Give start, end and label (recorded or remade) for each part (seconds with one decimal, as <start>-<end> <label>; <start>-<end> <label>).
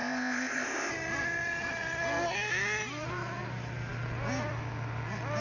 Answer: 0.0-0.9 remade; 0.9-5.4 recorded